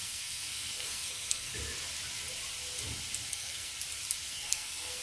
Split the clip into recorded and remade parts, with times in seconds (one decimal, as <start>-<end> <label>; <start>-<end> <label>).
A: 0.0-1.5 remade; 1.5-3.3 recorded; 3.3-3.7 remade; 3.7-4.3 recorded; 4.3-5.0 remade